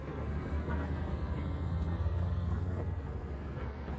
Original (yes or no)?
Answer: no